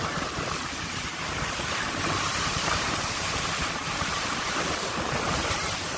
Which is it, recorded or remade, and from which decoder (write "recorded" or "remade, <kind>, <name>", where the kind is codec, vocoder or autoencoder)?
remade, vocoder, BigVGAN v2